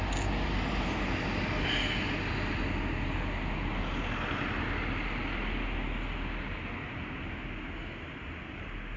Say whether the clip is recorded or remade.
recorded